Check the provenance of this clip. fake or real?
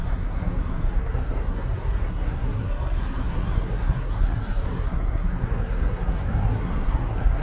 fake